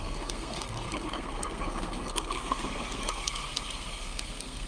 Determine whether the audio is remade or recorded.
remade